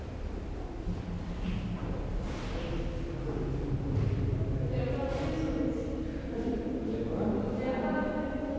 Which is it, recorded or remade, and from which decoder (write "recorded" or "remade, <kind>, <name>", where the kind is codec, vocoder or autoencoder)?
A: recorded